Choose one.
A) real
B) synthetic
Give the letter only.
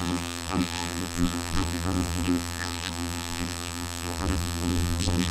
B